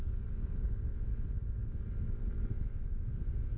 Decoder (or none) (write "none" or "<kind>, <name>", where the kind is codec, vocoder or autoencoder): none